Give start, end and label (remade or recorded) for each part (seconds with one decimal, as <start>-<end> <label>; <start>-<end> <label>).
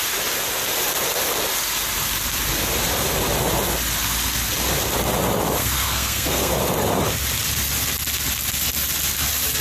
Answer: 0.0-5.6 recorded; 5.6-6.5 remade; 6.5-9.6 recorded